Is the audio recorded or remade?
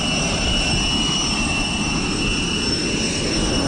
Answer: recorded